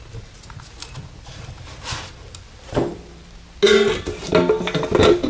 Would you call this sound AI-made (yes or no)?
no